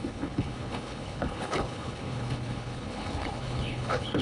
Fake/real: fake